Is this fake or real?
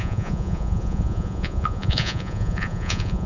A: fake